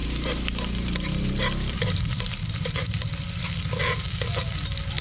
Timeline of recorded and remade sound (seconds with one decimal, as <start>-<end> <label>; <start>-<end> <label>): 0.0-3.0 remade; 3.0-5.0 recorded